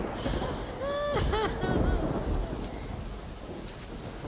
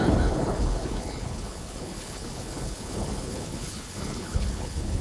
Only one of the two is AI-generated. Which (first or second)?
second